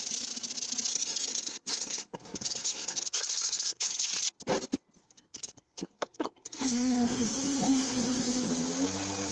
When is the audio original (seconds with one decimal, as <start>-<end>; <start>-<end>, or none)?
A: 0.0-0.9; 4.2-5.0; 8.5-9.3